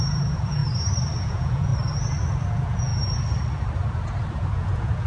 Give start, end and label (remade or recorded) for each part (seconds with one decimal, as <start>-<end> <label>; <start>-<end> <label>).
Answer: 0.0-0.6 remade; 0.6-1.2 recorded; 1.2-1.7 remade; 1.7-2.5 recorded; 2.5-2.9 remade; 2.9-4.3 recorded; 4.3-5.1 remade